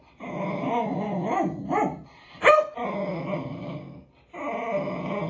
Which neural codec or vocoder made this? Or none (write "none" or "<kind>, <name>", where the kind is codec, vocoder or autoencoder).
none